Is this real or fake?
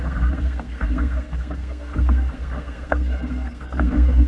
fake